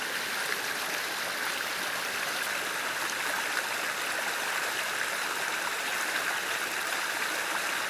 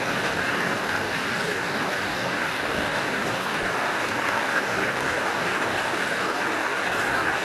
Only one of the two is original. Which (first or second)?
first